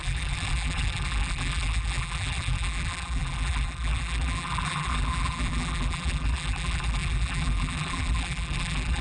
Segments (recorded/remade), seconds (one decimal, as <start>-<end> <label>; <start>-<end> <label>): 0.0-9.0 remade